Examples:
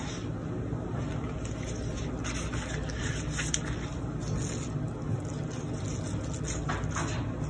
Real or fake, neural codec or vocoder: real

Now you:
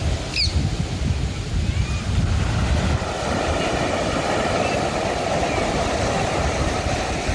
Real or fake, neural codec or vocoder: real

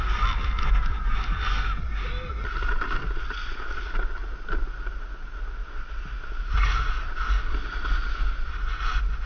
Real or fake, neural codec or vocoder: real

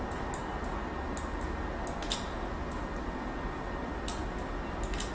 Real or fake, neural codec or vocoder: real